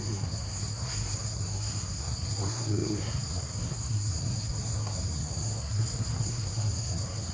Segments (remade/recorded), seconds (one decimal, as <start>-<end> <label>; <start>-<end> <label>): 0.0-7.3 remade